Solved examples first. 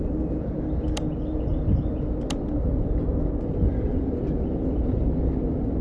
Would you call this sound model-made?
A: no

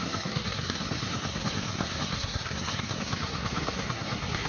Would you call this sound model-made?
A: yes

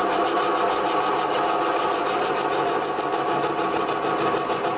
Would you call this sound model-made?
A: no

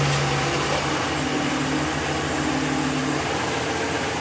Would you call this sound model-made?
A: no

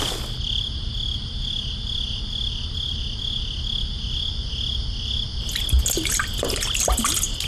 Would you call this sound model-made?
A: no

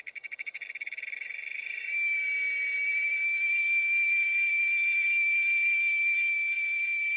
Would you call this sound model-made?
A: yes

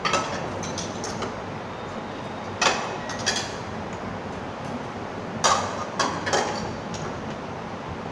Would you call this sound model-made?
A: no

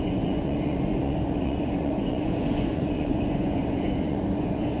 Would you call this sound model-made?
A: yes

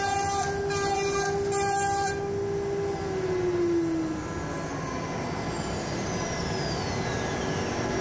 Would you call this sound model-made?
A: no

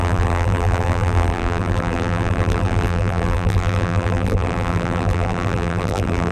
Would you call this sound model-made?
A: yes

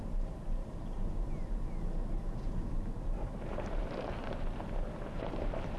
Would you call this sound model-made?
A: yes